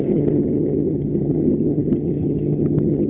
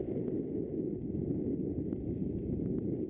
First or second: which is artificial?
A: first